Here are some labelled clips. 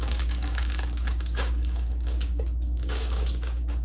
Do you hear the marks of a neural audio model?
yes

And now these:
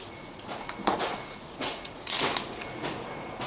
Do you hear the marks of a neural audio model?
yes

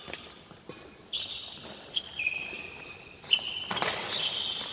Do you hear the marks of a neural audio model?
no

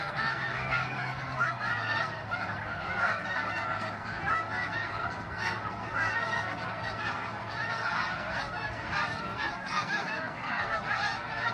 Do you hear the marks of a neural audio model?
yes